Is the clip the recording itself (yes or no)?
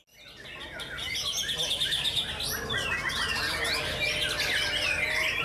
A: yes